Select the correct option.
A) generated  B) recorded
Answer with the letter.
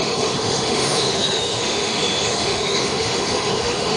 A